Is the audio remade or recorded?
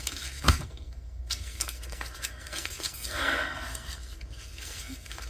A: remade